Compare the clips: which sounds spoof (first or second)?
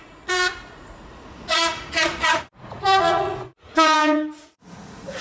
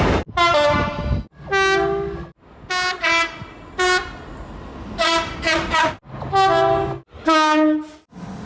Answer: first